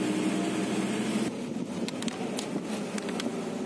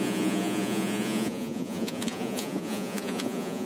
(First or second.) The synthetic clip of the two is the second